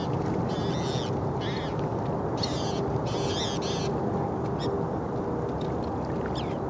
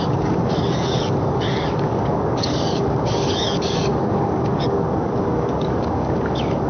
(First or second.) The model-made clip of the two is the second